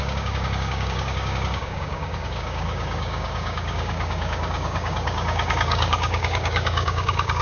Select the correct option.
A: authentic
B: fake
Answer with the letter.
B